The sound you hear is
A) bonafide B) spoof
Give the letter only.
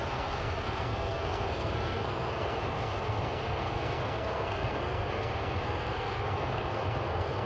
B